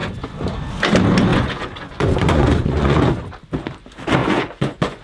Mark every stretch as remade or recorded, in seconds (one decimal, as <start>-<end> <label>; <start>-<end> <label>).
0.0-1.3 recorded; 1.3-3.0 remade; 3.0-4.2 recorded; 4.2-5.0 remade